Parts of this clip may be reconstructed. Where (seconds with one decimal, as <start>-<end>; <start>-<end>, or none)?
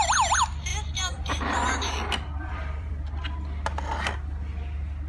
0.7-2.9